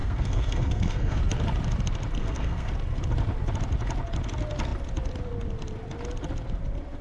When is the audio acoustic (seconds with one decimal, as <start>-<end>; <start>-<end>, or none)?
1.2-2.2; 2.7-7.0